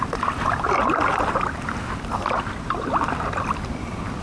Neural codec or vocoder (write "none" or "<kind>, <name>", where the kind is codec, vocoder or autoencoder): none